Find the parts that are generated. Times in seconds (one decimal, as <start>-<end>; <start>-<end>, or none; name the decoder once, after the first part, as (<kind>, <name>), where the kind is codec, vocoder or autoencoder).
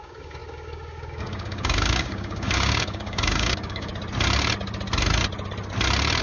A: 0.0-3.9 (codec, DAC)